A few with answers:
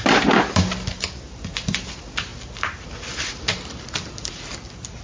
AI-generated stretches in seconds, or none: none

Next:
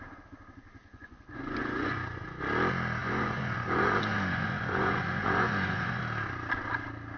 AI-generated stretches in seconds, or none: 0.8-2.4 (vocoder, Vocos); 3.0-6.0

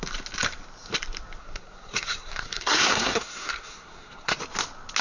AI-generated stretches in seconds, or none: 1.4-4.4 (codec, SNAC)

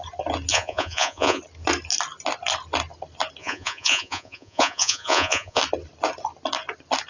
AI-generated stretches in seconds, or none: 0.5-1.4 (vocoder, Vocos); 3.4-5.6

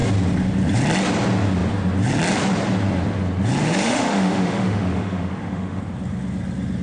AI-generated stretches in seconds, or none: 3.6-5.8 (autoencoder, DAC-VAE)

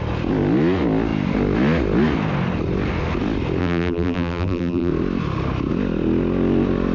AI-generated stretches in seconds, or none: 3.6-4.9 (vocoder, BigVGAN v2)

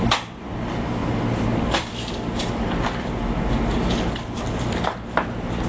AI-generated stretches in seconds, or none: none

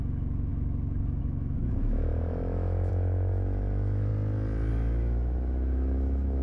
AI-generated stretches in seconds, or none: 0.0-4.1 (autoencoder, DAC-VAE); 4.7-6.4